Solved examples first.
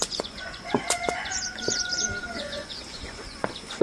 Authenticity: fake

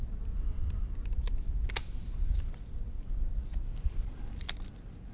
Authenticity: real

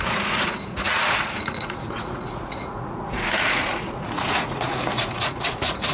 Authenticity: fake